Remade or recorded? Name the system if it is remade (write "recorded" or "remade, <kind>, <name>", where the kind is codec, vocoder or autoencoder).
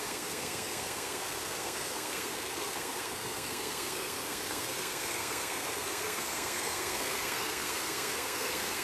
remade, codec, SNAC